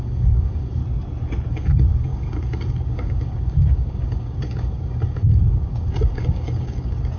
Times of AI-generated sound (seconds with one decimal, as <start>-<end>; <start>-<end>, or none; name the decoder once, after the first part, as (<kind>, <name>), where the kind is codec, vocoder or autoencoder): 0.0-0.8 (codec, DAC); 1.5-7.2